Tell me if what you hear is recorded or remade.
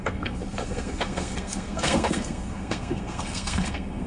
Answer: remade